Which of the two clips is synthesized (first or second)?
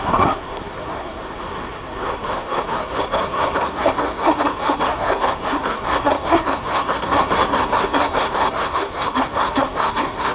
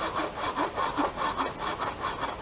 first